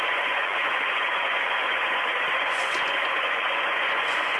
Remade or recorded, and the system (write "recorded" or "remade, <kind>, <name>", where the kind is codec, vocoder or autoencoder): remade, vocoder, Vocos